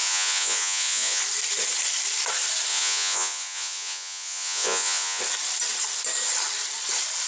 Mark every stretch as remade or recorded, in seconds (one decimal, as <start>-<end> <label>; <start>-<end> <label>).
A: 0.0-1.2 remade; 1.2-2.7 recorded; 2.7-5.2 remade; 5.2-7.3 recorded